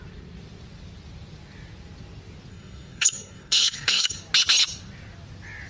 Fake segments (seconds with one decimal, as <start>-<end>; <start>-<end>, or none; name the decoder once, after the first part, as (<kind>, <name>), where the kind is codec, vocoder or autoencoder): 2.5-4.2 (codec, SNAC)